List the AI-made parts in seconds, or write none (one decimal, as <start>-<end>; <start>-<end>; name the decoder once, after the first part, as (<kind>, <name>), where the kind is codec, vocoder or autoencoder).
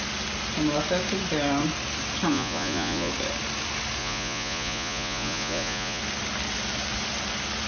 2.3-3.1 (vocoder, Vocos); 4.0-6.0